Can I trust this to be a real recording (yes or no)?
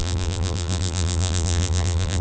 no